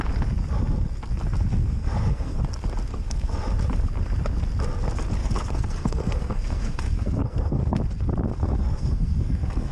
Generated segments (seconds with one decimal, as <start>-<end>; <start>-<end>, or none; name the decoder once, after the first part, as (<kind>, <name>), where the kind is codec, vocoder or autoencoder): 1.5-2.4 (codec, SNAC); 2.9-3.4; 5.2-7.8; 8.3-9.7